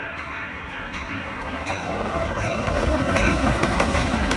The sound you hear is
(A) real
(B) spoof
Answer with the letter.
B